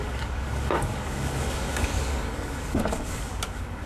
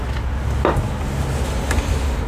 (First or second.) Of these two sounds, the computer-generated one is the first